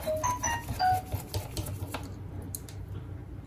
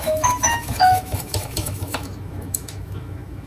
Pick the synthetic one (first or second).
second